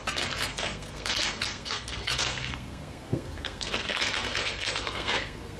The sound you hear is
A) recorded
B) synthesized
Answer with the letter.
B